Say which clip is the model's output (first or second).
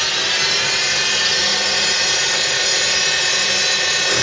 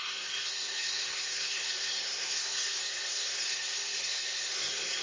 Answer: second